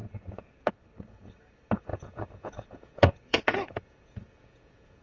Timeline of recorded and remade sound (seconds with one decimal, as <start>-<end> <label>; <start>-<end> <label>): 0.0-0.7 remade; 0.7-1.9 recorded; 1.9-5.0 remade